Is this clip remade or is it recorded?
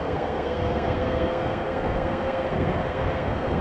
remade